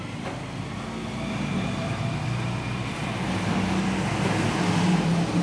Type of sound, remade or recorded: recorded